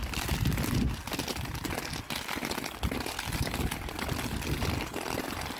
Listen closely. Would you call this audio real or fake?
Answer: real